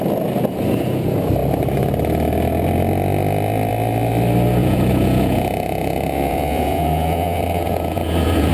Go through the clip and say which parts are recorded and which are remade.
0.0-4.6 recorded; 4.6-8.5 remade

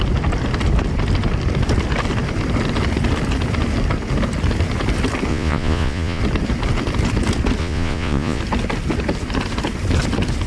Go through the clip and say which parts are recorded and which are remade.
0.0-5.3 recorded; 5.3-6.2 remade; 6.2-7.6 recorded; 7.6-8.4 remade; 8.4-10.5 recorded

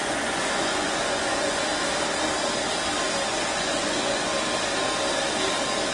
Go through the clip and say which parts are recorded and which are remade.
0.0-1.7 remade; 1.7-3.3 recorded; 3.3-4.3 remade; 4.3-5.9 recorded